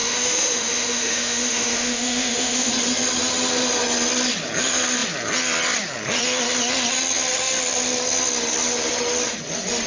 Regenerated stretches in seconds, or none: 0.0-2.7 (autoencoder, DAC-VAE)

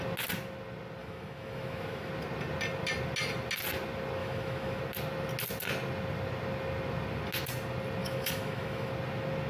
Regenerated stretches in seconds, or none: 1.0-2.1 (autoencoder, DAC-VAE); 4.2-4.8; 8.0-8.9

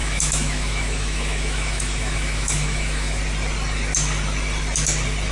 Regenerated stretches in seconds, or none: 0.0-3.2 (autoencoder, DAC-VAE)

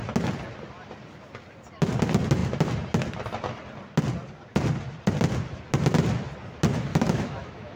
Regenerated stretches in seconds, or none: 6.9-7.8 (autoencoder, DAC-VAE)

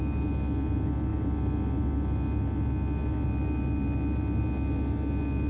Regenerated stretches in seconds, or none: none

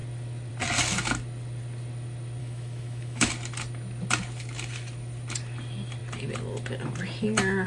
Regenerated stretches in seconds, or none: 2.4-3.3 (autoencoder, DAC-VAE)

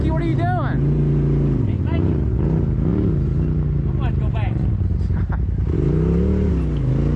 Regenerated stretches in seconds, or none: none

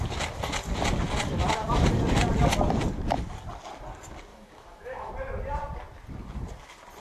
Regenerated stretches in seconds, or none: 4.3-5.1 (autoencoder, DAC-VAE)